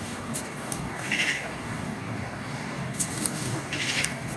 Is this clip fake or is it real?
fake